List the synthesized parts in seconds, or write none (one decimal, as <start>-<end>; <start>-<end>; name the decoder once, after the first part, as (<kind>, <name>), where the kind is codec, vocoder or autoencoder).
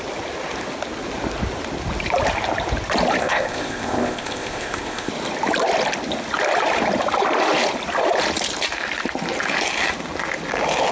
3.2-5.1 (codec, ZipCodec)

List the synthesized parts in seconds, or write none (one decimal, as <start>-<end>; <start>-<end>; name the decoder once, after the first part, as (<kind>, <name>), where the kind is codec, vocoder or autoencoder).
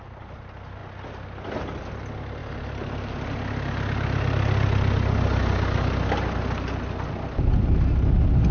none